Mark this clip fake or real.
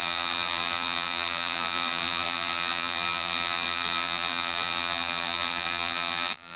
fake